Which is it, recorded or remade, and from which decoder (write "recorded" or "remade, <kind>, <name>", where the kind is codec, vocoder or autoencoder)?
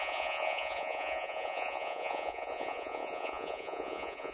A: remade, vocoder, Vocos